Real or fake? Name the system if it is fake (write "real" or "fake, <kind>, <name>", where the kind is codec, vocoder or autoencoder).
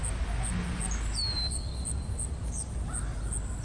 real